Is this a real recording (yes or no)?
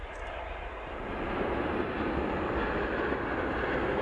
yes